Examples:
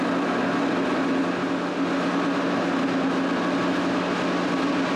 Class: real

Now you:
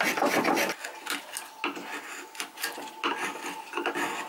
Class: real